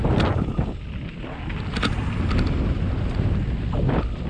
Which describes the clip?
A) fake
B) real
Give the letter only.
B